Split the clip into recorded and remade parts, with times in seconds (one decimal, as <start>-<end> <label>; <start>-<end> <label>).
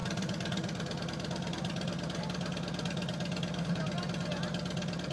0.0-5.1 recorded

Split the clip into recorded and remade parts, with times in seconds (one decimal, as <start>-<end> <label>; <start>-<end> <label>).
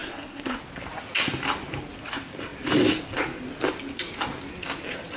0.0-0.6 remade; 0.6-5.2 recorded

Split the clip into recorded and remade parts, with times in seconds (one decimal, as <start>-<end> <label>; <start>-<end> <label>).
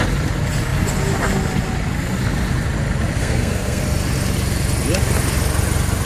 0.0-3.2 recorded; 3.2-3.8 remade; 3.8-6.0 recorded